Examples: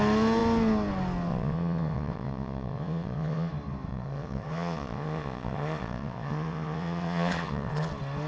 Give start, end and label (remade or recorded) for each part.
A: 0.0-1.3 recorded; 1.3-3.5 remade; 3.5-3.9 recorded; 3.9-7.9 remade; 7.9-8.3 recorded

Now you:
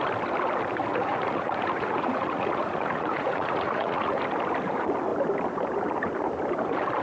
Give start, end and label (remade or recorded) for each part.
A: 0.0-0.9 recorded; 0.9-4.2 remade; 4.2-7.0 recorded

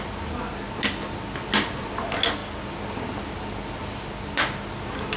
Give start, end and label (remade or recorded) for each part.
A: 0.0-5.2 recorded

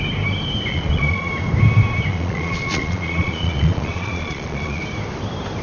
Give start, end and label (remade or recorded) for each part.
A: 0.0-0.7 recorded; 0.7-1.3 remade; 1.3-2.1 recorded; 2.1-4.8 remade; 4.8-5.6 recorded

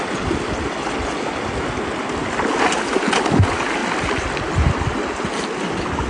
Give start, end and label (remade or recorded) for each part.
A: 0.0-6.1 recorded

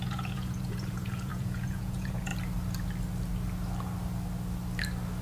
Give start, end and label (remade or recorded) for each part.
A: 0.0-2.3 remade; 2.3-5.2 recorded

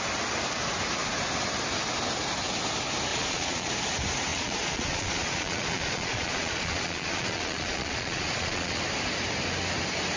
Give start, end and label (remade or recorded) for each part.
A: 0.0-3.1 recorded; 3.1-3.7 remade; 3.7-4.3 recorded; 4.3-8.8 remade; 8.8-10.2 recorded

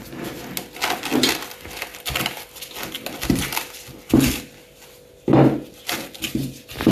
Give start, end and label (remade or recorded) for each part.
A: 0.0-6.9 recorded